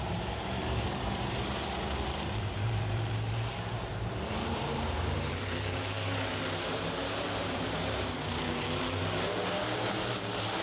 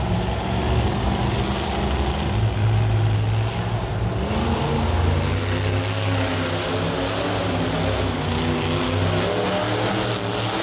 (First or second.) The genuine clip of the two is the second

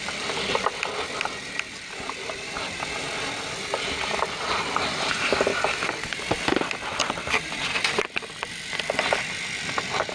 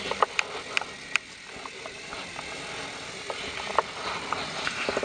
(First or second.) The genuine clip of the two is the second